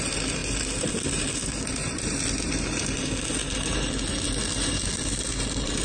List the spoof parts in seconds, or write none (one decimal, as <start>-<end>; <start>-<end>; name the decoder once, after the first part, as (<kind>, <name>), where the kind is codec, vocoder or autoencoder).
none